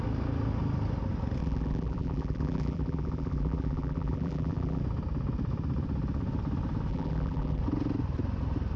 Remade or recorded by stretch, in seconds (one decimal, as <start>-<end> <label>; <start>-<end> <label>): 0.0-1.4 recorded; 1.4-4.8 remade; 4.8-6.9 recorded; 6.9-7.6 remade; 7.6-8.8 recorded